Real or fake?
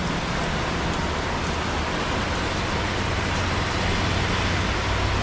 real